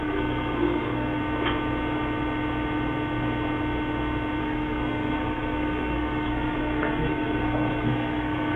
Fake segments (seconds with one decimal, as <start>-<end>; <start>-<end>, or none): 0.0-1.2; 4.4-8.6